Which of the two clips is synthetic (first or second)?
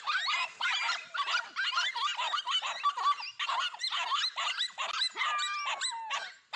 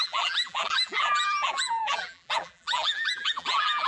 second